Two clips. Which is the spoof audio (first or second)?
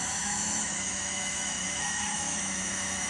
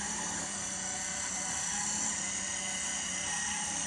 first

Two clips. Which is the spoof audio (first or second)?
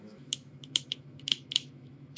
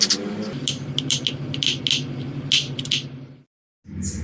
first